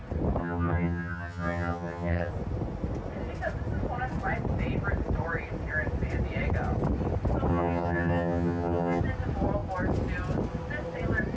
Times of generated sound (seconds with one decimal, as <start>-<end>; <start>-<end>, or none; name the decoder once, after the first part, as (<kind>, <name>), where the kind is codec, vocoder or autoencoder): 0.4-2.3 (vocoder, HiFi-GAN); 7.5-9.0